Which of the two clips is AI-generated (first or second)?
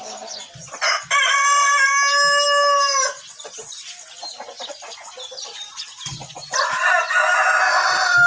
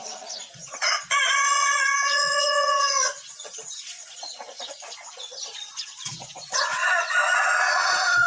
second